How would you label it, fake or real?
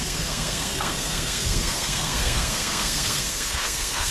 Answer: fake